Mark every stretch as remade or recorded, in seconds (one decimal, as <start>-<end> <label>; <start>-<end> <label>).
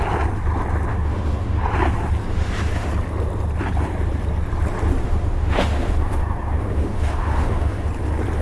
0.0-0.9 recorded; 0.9-1.6 remade; 1.6-2.3 recorded; 2.3-2.9 remade; 2.9-5.0 recorded; 5.0-7.9 remade; 7.9-8.4 recorded